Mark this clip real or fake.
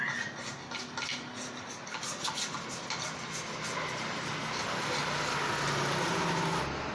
real